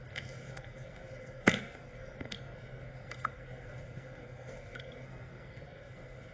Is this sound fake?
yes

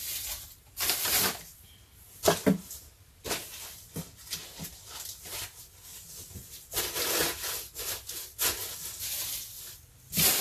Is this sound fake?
no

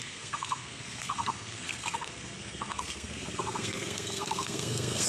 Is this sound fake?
yes